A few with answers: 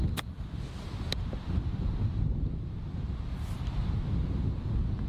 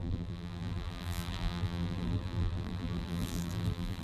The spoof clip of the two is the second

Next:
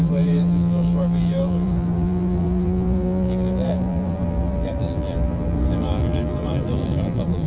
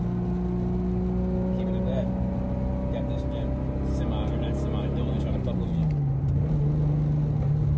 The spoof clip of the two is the first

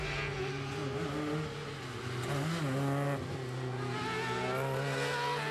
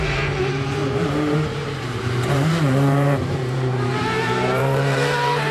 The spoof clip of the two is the second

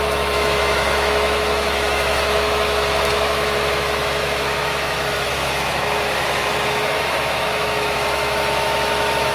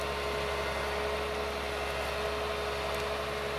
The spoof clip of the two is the first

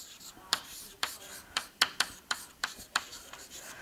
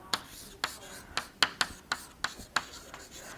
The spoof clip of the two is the first